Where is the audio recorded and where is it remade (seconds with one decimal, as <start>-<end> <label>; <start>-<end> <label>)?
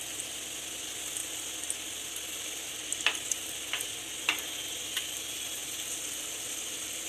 0.0-7.1 recorded